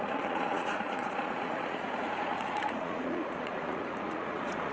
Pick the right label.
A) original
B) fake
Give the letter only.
B